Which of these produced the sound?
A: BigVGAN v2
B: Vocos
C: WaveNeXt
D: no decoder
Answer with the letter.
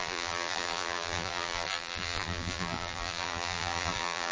A